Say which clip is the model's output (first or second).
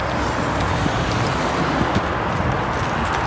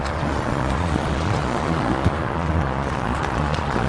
second